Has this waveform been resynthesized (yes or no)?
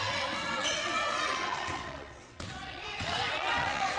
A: yes